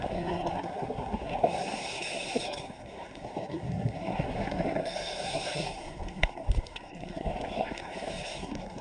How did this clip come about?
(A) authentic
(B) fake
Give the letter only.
B